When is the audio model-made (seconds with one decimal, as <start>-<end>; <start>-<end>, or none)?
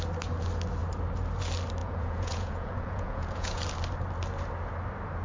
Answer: 1.8-3.6